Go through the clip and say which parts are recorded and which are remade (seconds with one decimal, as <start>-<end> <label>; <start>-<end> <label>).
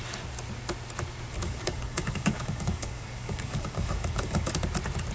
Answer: 0.0-1.4 recorded; 1.4-4.5 remade; 4.5-5.1 recorded